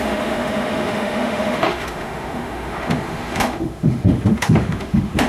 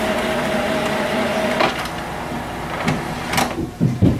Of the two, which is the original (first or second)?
second